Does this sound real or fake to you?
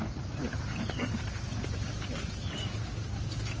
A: fake